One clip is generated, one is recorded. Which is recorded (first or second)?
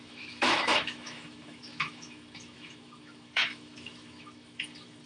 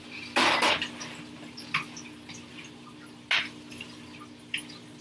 second